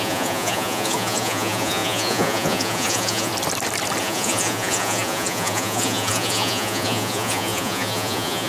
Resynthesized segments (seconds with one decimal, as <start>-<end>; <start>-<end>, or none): 0.0-3.3; 4.0-8.5